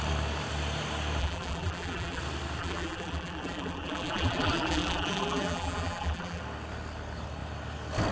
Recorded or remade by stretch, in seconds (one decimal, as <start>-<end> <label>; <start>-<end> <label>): 0.0-1.2 recorded; 1.2-2.2 remade; 2.2-2.6 recorded; 2.6-6.4 remade; 6.4-8.1 recorded